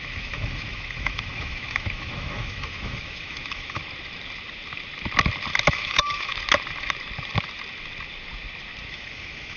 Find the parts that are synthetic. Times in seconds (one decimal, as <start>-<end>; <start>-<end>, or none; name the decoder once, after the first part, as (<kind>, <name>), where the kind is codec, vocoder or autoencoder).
0.0-3.8 (autoencoder, DAC-VAE); 5.7-6.3; 8.9-9.6